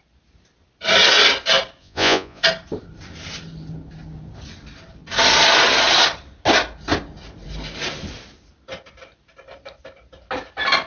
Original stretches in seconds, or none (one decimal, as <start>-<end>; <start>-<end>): 0.0-1.8; 2.4-10.9